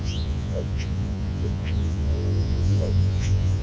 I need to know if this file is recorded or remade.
remade